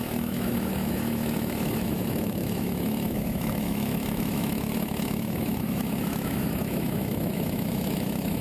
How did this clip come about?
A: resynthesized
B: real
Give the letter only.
A